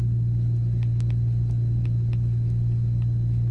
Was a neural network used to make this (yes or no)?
no